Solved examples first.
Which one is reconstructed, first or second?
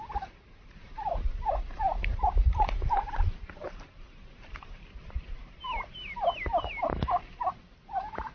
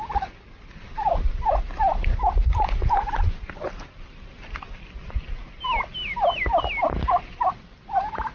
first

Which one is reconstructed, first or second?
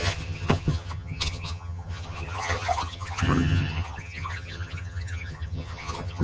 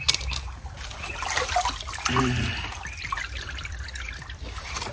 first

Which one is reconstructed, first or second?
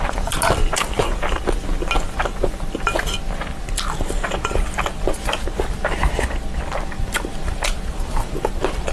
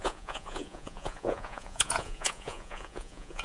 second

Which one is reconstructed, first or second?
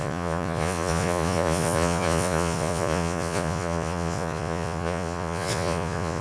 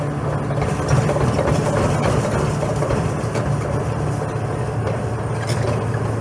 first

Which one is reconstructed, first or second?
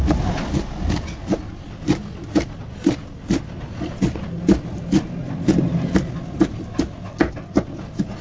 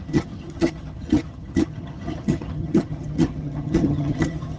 second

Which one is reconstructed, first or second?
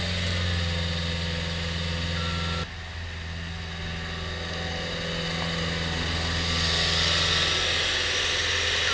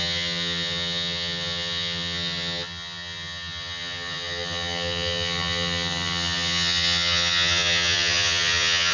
second